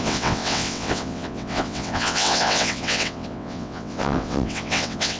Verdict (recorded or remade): remade